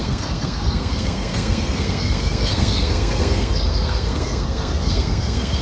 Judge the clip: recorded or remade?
remade